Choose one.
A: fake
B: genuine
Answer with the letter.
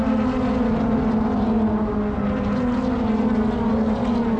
B